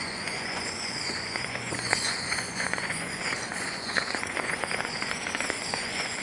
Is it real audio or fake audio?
fake